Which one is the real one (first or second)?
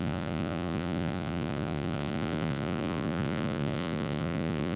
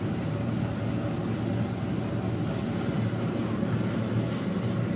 second